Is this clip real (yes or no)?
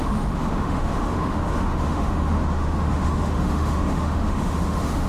no